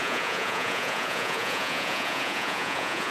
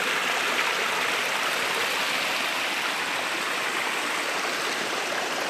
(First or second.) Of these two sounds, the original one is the second